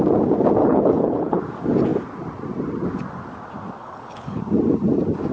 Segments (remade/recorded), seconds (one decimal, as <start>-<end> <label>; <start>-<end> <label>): 0.0-0.6 recorded; 0.6-1.4 remade; 1.4-3.8 recorded; 3.8-4.4 remade; 4.4-5.3 recorded